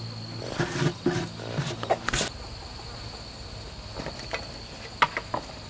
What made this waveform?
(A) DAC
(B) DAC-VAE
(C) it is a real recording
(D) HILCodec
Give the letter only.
C